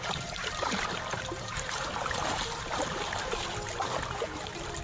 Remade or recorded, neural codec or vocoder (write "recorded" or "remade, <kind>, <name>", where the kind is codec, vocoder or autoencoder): remade, vocoder, BigVGAN v2